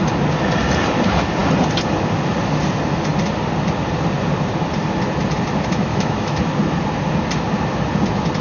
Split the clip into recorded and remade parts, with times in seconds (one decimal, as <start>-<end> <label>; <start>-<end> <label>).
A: 0.0-5.9 recorded; 5.9-6.4 remade; 6.4-8.4 recorded